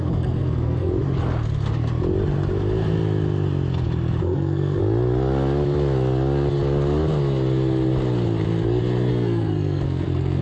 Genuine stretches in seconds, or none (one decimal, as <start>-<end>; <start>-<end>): 1.0-4.2; 4.8-9.1